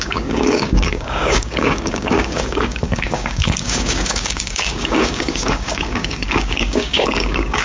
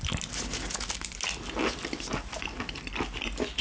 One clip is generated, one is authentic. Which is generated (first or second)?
first